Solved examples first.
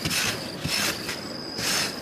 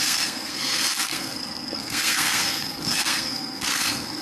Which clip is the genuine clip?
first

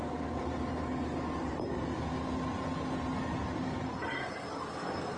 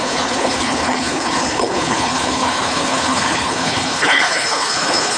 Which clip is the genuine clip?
first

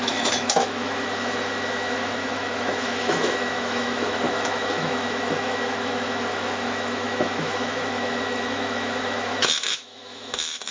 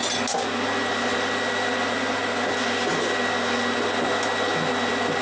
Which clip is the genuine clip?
second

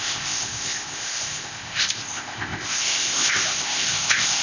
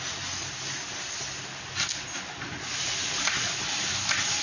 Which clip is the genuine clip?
second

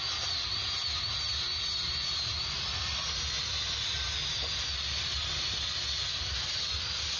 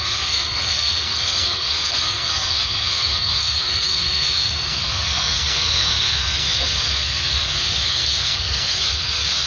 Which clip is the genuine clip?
first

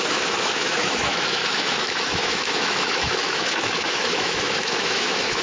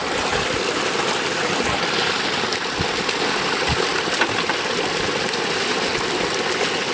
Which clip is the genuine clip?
second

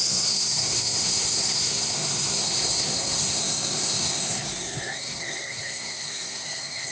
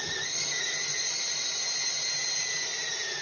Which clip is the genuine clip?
second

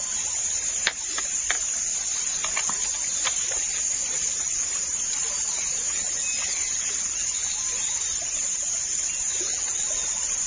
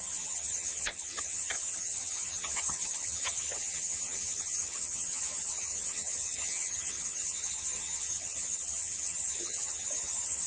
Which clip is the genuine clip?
first